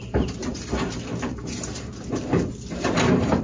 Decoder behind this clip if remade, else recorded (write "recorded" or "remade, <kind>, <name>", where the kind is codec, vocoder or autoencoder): remade, vocoder, BigVGAN v2